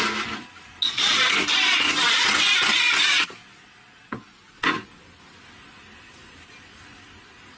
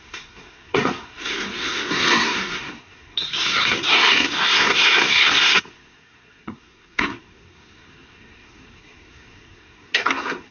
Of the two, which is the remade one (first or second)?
second